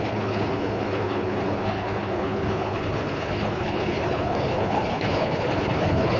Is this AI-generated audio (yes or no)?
yes